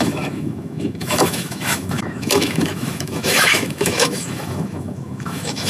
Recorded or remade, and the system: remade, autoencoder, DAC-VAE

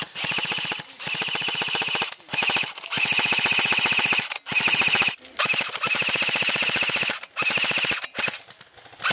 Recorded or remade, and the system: recorded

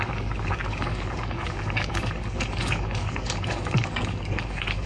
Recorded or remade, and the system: remade, codec, DAC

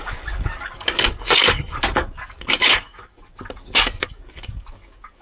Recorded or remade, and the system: remade, codec, DAC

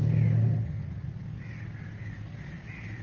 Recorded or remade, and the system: recorded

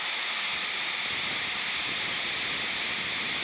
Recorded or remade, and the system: recorded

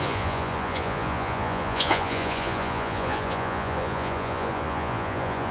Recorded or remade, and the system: remade, vocoder, Vocos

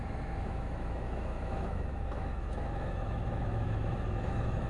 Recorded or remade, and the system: remade, autoencoder, DAC-VAE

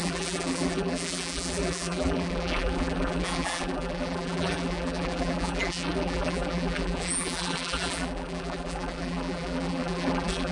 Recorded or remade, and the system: remade, vocoder, BigVGAN v2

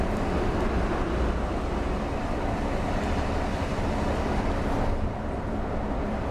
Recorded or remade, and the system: recorded